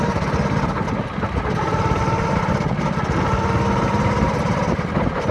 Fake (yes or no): no